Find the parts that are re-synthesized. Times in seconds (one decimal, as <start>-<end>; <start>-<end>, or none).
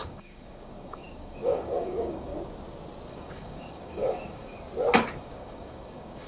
0.0-2.3; 3.1-4.5; 5.2-6.3